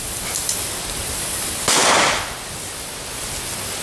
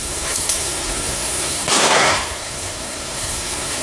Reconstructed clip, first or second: second